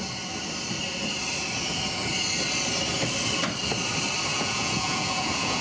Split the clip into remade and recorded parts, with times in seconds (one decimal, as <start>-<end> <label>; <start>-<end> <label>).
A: 0.0-4.3 recorded; 4.3-5.6 remade